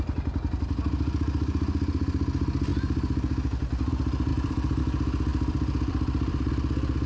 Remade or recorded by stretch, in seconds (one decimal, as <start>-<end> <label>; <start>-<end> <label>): 0.0-4.3 recorded; 4.3-4.8 remade; 4.8-5.3 recorded; 5.3-6.5 remade; 6.5-7.1 recorded

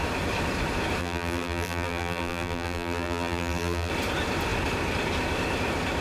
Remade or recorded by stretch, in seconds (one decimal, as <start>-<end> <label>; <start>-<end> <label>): 0.0-1.0 recorded; 1.0-3.9 remade; 3.9-6.0 recorded

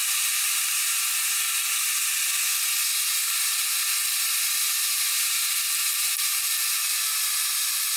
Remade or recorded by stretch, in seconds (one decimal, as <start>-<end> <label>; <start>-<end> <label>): 0.0-8.0 recorded